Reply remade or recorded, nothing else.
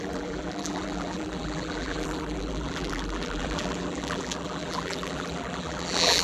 remade